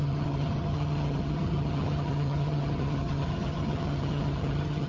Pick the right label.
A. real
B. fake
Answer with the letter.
B